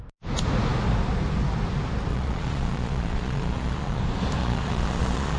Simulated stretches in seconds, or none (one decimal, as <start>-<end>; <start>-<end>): 2.1-4.0; 4.4-5.4